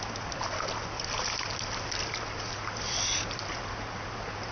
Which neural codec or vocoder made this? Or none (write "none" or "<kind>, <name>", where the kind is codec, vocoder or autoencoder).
none